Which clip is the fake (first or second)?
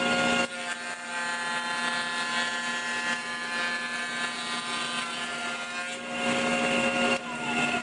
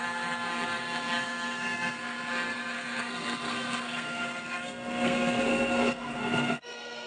second